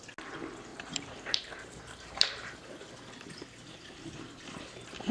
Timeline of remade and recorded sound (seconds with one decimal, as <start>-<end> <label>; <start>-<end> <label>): 0.0-0.7 recorded; 0.7-2.9 remade; 2.9-5.1 recorded